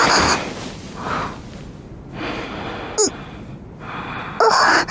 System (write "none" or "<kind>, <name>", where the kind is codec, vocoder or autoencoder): none